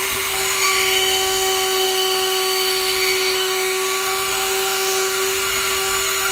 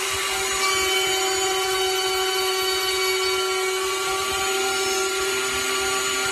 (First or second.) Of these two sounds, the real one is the second